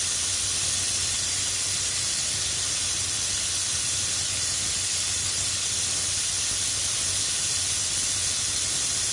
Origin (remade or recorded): recorded